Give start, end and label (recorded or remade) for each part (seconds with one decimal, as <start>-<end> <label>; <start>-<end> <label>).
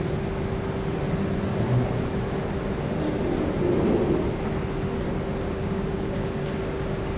0.0-5.6 recorded; 5.6-6.3 remade; 6.3-7.2 recorded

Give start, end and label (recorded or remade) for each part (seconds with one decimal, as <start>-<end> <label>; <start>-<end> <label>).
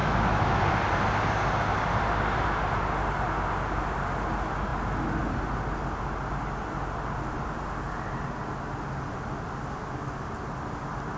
0.0-0.6 remade; 0.6-11.2 recorded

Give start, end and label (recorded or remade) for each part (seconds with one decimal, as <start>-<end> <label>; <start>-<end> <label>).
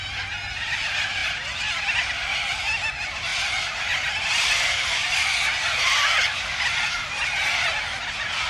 0.0-8.5 recorded